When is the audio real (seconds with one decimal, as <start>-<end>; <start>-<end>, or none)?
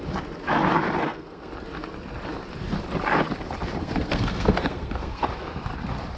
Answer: 0.0-1.0; 1.5-3.8; 5.2-6.2